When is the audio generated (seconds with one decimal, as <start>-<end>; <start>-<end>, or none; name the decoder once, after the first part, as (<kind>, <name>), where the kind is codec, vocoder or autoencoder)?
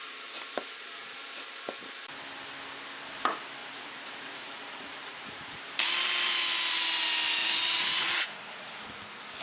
1.0-1.6 (vocoder, Vocos); 3.6-5.6; 7.4-9.0